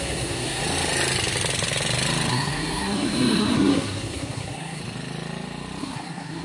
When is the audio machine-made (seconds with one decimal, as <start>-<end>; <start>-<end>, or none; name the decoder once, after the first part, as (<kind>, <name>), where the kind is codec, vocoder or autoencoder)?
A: 0.0-0.6 (codec, SNAC); 2.3-4.8; 5.8-6.4